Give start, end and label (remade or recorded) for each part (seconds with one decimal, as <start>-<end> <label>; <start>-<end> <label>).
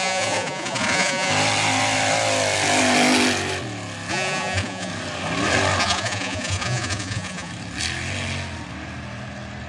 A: 0.0-1.3 remade; 1.3-4.1 recorded; 4.1-4.9 remade; 4.9-5.8 recorded; 5.8-7.5 remade; 7.5-9.7 recorded